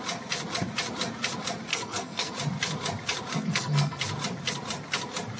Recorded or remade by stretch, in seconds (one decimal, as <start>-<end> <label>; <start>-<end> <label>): 0.0-1.7 recorded; 1.7-2.3 remade; 2.3-3.3 recorded; 3.3-4.0 remade; 4.0-5.4 recorded